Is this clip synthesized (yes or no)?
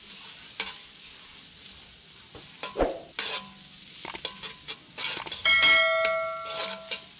no